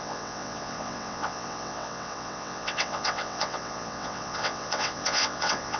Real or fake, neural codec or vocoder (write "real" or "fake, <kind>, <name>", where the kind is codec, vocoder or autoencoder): fake, vocoder, WaveNeXt